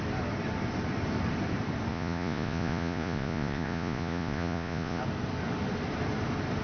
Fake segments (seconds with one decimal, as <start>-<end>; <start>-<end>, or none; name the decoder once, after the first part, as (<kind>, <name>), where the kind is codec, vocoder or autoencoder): 1.9-5.0 (vocoder, Vocos)